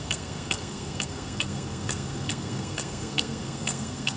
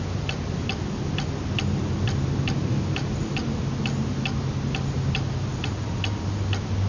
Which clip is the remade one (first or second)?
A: first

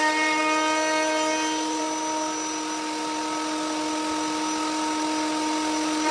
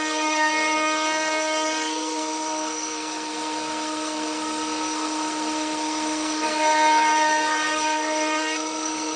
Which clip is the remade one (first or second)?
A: second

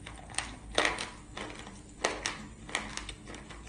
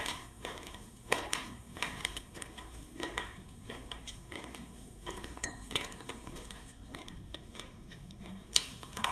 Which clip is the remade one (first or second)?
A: second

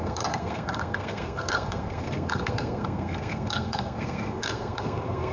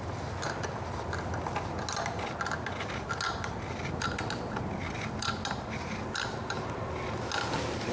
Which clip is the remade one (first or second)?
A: first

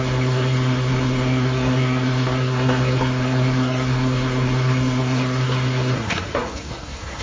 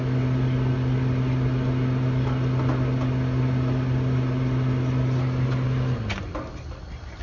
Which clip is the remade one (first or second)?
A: first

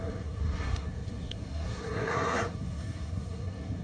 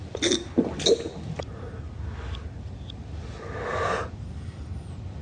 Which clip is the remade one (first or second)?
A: first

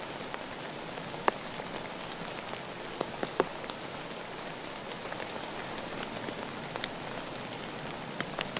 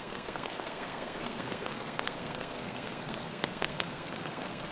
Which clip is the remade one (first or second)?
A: second